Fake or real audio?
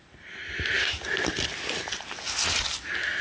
real